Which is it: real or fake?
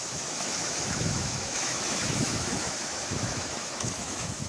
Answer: fake